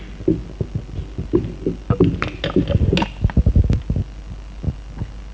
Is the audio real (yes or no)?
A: yes